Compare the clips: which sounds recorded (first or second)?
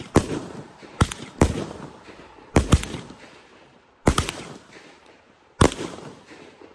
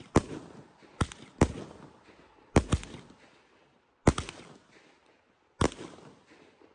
second